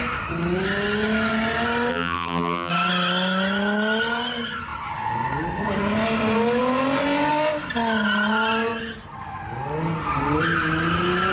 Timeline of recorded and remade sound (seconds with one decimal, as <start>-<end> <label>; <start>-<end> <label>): 0.0-1.9 recorded; 1.9-2.7 remade; 2.7-11.3 recorded

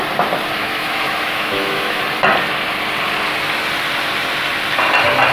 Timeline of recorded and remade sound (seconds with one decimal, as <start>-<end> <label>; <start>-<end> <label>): 0.0-0.6 recorded; 0.6-2.0 remade; 2.0-5.3 recorded

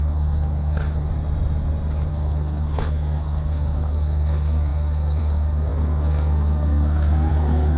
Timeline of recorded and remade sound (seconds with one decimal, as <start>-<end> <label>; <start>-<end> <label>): 0.0-1.1 remade; 1.1-2.1 recorded; 2.1-7.8 remade